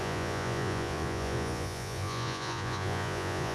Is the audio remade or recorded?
remade